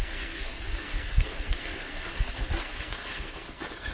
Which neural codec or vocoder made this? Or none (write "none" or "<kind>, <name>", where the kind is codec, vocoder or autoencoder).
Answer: codec, SNAC